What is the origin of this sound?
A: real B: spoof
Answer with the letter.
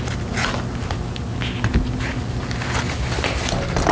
A